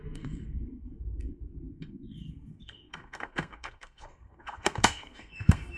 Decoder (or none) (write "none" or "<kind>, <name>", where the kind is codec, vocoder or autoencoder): codec, SNAC